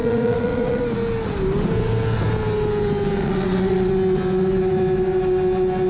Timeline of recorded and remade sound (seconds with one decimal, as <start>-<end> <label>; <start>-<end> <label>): 0.0-0.8 remade; 0.8-3.2 recorded; 3.2-3.9 remade; 3.9-5.9 recorded